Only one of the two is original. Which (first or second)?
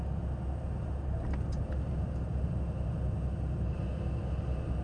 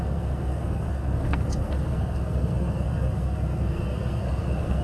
first